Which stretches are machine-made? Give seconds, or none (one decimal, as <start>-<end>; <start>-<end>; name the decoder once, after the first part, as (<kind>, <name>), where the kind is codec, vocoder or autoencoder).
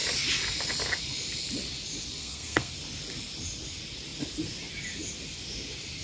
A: 2.2-2.7 (codec, SNAC)